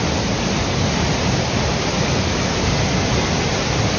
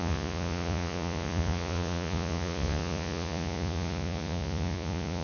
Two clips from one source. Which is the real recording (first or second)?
first